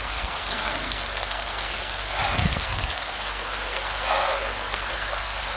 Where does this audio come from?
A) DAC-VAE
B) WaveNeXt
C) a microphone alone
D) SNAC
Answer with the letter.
D